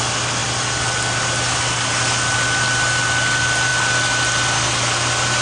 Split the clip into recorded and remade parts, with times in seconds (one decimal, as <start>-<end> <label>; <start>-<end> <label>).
0.0-5.4 recorded